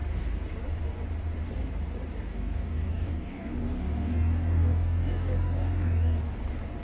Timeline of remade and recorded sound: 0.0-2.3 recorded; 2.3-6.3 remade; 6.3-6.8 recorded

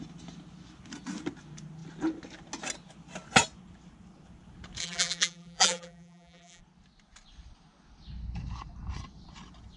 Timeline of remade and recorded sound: 0.0-4.8 recorded; 4.8-6.6 remade; 6.6-9.8 recorded

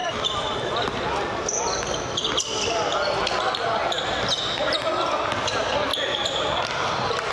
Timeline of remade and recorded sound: 0.0-5.9 recorded; 5.9-7.3 remade

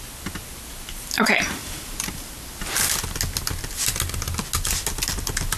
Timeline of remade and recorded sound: 0.0-1.6 recorded; 1.6-2.6 remade; 2.6-5.6 recorded

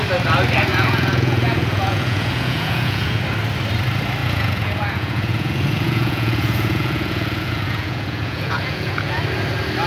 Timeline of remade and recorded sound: 0.0-0.7 recorded; 0.7-3.2 remade; 3.2-4.2 recorded; 4.2-9.2 remade; 9.2-9.9 recorded

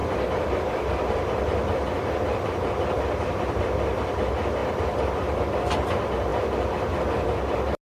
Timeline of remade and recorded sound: 0.0-2.7 remade; 2.7-4.6 recorded; 4.6-5.4 remade; 5.4-7.9 recorded

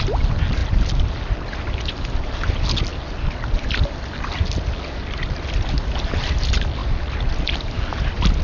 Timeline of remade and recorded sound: 0.0-8.4 recorded